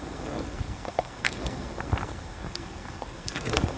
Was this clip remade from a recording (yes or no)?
yes